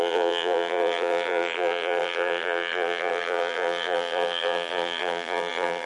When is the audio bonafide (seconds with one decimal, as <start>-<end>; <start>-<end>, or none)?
none